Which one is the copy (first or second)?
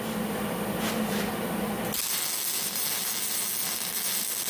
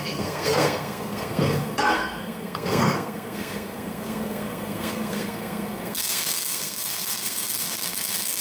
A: second